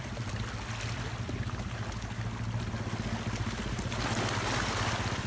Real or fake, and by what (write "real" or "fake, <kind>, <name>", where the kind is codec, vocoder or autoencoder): real